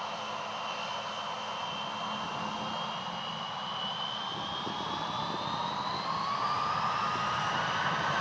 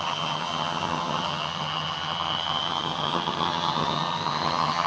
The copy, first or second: second